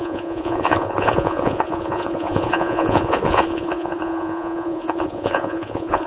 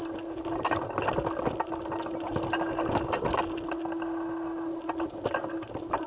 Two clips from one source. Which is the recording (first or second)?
second